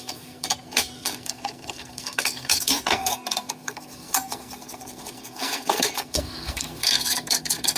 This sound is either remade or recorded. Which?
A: remade